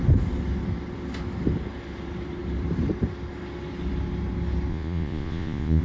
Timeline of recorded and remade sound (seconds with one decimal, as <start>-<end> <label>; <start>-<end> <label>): 0.0-4.7 recorded; 4.7-5.8 remade